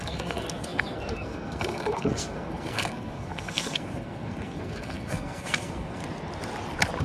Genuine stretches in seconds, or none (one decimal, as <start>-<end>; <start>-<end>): 6.0-7.0